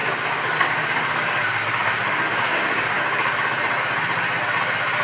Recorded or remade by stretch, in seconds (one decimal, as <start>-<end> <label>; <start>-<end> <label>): 0.0-3.0 remade; 3.0-5.0 recorded